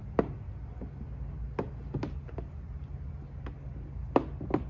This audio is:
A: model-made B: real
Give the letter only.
B